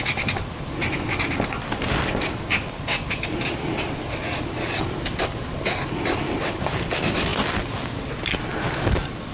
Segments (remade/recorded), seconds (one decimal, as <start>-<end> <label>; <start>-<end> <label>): 0.0-7.3 remade; 7.3-8.6 recorded; 8.6-9.3 remade